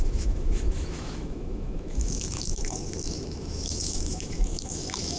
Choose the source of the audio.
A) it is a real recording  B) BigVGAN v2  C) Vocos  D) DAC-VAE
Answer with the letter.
D